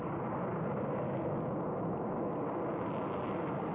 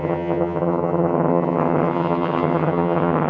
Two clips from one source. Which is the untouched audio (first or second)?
first